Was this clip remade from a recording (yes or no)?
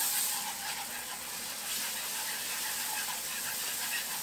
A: no